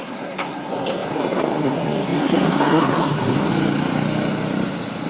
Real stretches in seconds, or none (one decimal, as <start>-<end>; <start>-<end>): 3.5-5.1